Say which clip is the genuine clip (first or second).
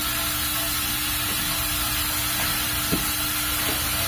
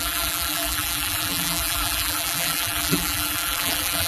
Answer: first